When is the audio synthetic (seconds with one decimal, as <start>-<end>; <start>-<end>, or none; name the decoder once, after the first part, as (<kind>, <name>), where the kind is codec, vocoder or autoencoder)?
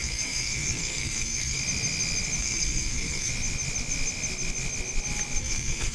0.0-1.6 (codec, SNAC); 2.4-3.3; 5.4-5.9